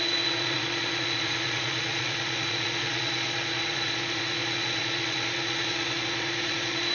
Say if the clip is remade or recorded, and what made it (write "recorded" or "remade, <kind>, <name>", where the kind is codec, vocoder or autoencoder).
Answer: remade, vocoder, Vocos